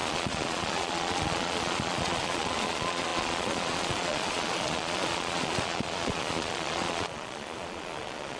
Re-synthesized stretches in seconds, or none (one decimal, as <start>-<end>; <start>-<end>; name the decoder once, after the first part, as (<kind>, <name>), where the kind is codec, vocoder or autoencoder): 0.0-8.4 (vocoder, Vocos)